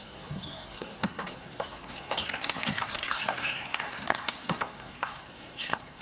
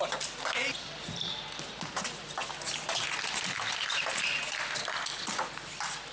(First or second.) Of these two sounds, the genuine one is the second